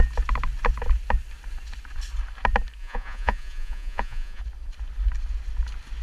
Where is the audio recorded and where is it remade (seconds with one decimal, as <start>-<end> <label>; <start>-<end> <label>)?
0.0-2.8 recorded; 2.8-4.4 remade; 4.4-6.0 recorded